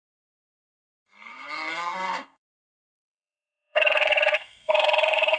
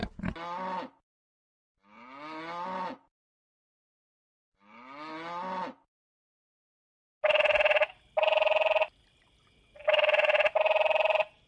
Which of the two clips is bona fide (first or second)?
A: second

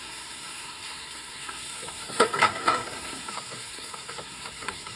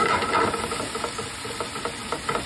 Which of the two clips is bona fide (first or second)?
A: second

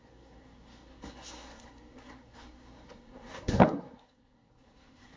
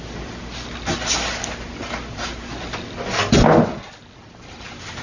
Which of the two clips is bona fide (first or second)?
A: second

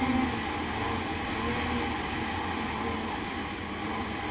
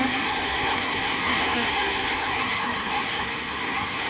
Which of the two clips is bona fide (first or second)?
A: first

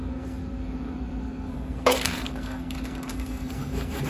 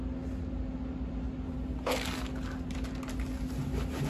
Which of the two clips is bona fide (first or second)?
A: second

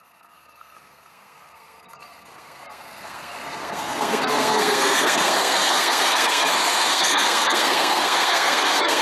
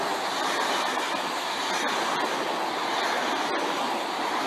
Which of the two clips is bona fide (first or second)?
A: second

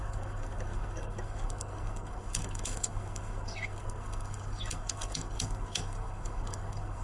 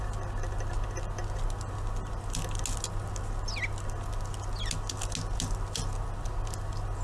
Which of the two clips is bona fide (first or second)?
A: second